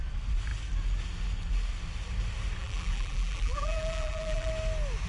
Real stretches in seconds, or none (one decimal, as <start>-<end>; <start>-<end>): 0.0-2.6; 4.5-5.1